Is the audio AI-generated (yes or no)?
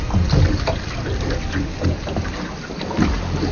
no